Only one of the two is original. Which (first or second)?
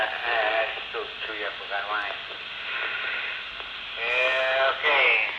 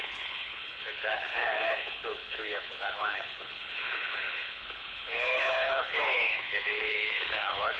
first